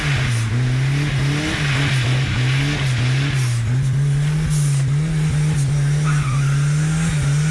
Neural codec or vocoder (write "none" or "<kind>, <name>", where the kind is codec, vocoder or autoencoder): none